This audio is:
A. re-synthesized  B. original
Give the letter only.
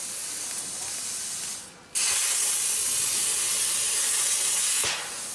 B